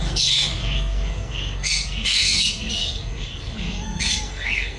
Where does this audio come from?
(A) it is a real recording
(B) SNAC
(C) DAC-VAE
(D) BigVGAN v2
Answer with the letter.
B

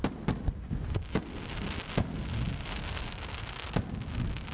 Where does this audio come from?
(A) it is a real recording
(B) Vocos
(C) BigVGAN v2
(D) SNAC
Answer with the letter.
A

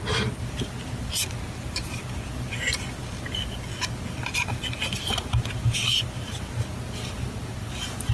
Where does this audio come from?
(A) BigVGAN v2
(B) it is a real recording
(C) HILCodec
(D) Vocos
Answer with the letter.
B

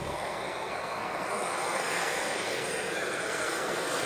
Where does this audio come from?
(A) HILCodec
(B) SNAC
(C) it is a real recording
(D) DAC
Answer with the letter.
B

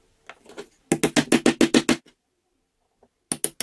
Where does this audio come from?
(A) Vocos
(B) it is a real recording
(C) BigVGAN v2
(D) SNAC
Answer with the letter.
B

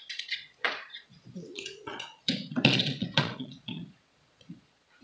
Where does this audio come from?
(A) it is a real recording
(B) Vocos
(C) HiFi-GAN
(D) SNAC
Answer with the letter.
B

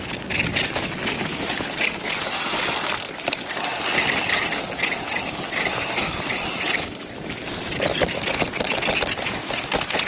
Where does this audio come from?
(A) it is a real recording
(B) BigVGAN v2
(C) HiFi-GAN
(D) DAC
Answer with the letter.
A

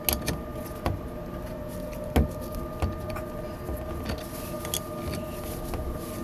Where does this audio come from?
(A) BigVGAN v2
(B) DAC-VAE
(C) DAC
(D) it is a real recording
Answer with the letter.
D